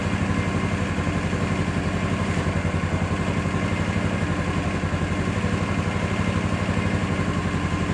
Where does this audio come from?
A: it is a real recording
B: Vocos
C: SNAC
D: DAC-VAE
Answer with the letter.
A